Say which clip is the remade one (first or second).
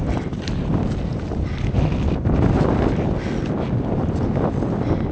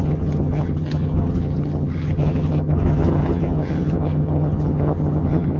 second